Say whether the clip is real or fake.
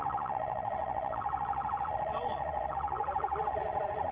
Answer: fake